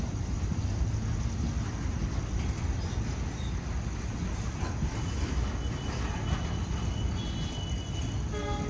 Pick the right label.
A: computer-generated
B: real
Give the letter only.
B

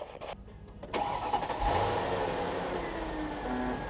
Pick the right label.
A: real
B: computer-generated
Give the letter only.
A